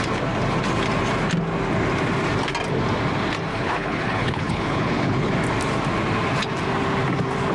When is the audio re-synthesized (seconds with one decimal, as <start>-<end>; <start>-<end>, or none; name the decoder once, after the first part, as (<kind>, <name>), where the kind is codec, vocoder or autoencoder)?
3.5-5.3 (codec, HILCodec)